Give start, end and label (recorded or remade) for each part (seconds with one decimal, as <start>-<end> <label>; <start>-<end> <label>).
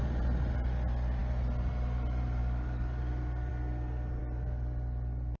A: 0.0-2.4 recorded; 2.4-3.0 remade; 3.0-5.4 recorded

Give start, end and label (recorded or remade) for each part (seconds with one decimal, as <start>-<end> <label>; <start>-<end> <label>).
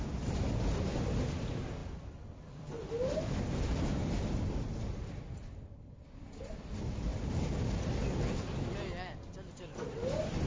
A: 0.0-7.1 remade; 7.1-7.7 recorded; 7.7-10.5 remade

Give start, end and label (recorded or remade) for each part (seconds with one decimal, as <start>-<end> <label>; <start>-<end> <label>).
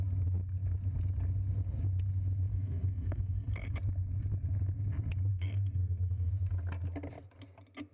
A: 0.0-2.5 recorded; 2.5-3.7 remade; 3.7-5.3 recorded; 5.3-6.3 remade; 6.3-7.9 recorded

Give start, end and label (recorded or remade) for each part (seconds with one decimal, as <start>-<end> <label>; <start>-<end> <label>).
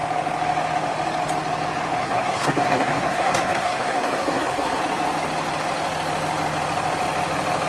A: 0.0-2.0 recorded; 2.0-4.8 remade; 4.8-7.7 recorded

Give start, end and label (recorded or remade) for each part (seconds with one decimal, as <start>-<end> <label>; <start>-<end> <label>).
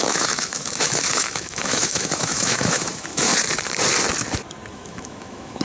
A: 0.0-3.3 remade; 3.3-4.7 recorded; 4.7-5.6 remade